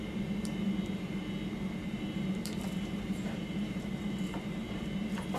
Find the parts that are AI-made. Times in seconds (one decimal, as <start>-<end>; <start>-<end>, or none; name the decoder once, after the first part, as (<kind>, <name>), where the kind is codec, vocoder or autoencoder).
1.8-5.0 (vocoder, BigVGAN v2)